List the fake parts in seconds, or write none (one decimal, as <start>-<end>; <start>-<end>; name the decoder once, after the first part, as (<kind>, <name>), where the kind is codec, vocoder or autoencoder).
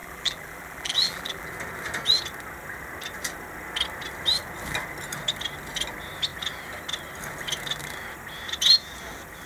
0.0-1.5 (vocoder, BigVGAN v2)